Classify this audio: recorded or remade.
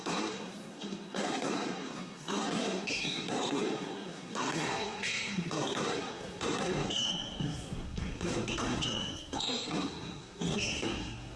remade